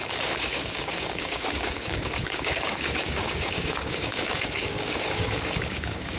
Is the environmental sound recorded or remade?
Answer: remade